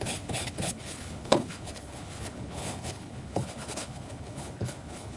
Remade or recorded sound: remade